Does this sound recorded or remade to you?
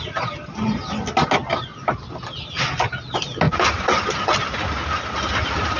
recorded